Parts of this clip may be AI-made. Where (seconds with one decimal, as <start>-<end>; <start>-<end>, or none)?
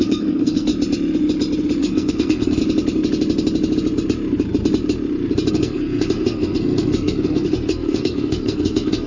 0.0-0.7; 1.8-2.6; 5.5-9.1